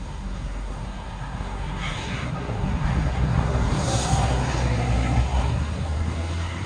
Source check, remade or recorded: remade